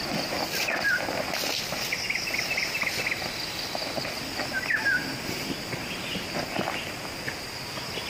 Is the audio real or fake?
real